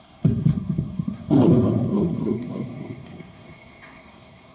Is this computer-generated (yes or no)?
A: yes